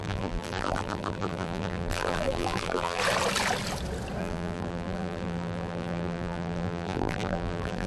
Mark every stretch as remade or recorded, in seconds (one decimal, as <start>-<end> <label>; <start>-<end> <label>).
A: 0.0-3.0 remade; 3.0-4.2 recorded; 4.2-7.9 remade